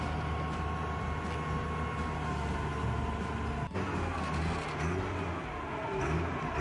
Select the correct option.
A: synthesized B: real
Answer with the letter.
B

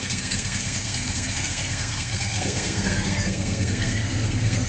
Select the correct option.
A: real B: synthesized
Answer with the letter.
B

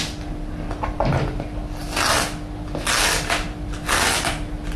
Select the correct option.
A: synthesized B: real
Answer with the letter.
B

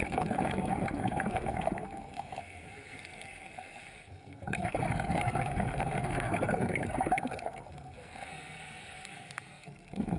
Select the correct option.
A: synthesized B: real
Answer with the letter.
A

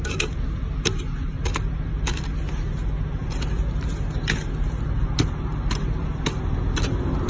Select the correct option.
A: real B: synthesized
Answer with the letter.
A